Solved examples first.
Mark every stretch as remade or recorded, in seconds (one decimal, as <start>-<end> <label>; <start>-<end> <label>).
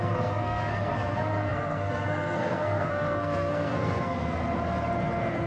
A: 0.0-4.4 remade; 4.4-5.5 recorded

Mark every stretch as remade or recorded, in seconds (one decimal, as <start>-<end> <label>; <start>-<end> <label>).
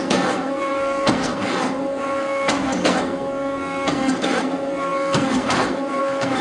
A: 0.0-6.4 remade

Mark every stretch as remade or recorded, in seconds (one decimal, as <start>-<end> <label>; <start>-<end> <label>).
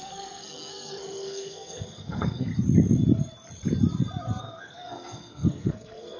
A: 0.0-2.5 remade; 2.5-4.4 recorded; 4.4-6.2 remade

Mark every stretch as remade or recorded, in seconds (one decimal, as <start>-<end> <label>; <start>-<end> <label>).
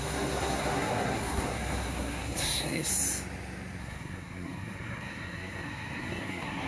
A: 0.0-2.9 remade; 2.9-3.8 recorded; 3.8-6.7 remade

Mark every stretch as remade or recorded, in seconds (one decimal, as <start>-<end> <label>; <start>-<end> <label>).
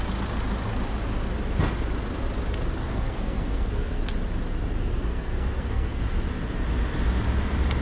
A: 0.0-2.8 recorded; 2.8-4.0 remade; 4.0-4.9 recorded; 4.9-6.0 remade; 6.0-7.8 recorded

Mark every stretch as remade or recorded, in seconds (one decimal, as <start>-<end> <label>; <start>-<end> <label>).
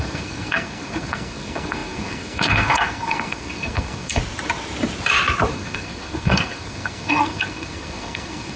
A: 0.0-4.2 remade; 4.2-5.5 recorded; 5.5-8.6 remade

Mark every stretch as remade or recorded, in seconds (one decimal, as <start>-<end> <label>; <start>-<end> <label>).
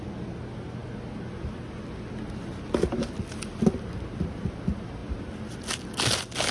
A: 0.0-6.5 recorded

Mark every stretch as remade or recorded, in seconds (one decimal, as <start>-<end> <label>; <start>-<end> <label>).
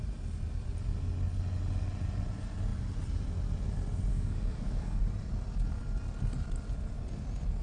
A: 0.0-4.1 recorded; 4.1-5.0 remade; 5.0-7.6 recorded